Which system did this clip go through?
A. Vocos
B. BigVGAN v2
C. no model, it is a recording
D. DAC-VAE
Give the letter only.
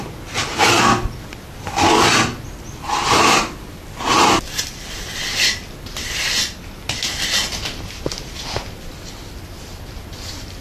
C